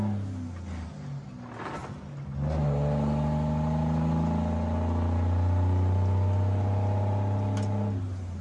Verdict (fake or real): real